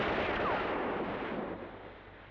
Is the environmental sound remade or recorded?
recorded